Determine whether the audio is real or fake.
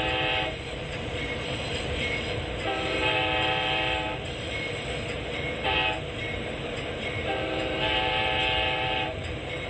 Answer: fake